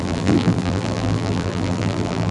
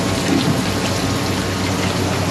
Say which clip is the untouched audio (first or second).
second